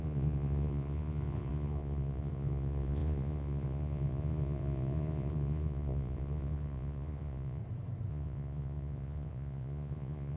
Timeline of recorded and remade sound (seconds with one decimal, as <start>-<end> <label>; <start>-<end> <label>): 0.0-7.6 remade; 7.6-8.1 recorded; 8.1-10.4 remade